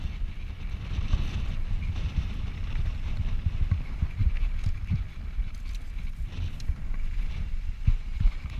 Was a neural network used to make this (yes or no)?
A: no